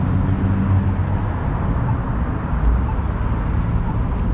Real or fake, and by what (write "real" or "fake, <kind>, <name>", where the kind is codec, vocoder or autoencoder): real